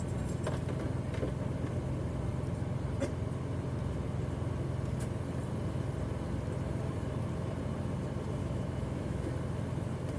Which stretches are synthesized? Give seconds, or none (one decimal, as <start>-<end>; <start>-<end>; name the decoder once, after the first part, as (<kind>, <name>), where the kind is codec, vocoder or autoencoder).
8.4-9.3 (autoencoder, DAC-VAE)